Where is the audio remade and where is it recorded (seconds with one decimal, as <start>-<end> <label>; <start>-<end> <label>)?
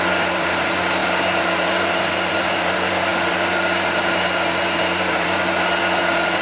0.0-6.4 remade